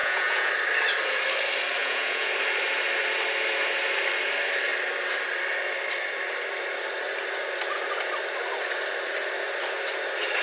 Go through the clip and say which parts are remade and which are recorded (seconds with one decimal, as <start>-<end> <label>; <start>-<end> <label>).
0.0-0.5 remade; 0.5-1.8 recorded; 1.8-2.3 remade; 2.3-10.4 recorded